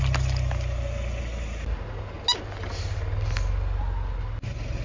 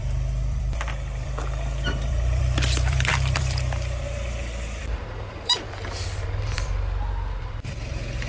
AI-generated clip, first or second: second